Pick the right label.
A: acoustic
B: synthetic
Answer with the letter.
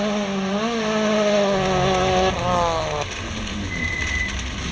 A